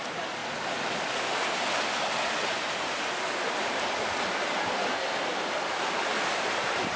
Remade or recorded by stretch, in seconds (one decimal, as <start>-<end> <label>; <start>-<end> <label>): 0.0-5.3 recorded; 5.3-7.0 remade